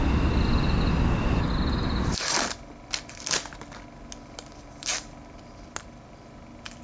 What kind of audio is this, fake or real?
real